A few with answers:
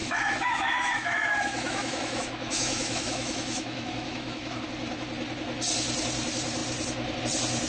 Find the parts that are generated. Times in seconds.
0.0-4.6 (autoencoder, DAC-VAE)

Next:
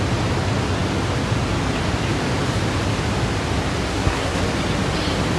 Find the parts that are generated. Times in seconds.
3.9-4.4 (codec, SNAC)

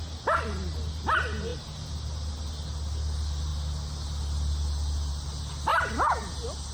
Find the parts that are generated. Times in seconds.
none